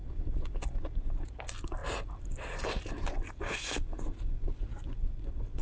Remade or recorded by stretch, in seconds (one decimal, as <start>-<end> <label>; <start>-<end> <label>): 0.0-5.6 recorded